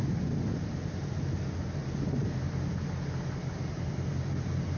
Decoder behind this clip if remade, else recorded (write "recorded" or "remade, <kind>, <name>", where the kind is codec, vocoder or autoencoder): recorded